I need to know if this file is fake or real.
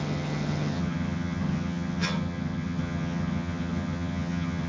fake